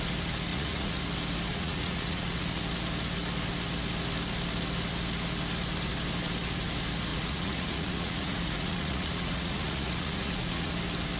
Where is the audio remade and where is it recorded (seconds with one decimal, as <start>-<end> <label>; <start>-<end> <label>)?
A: 0.0-0.5 recorded; 0.5-1.0 remade; 1.0-1.5 recorded; 1.5-2.6 remade; 2.6-7.1 recorded; 7.1-10.7 remade; 10.7-11.2 recorded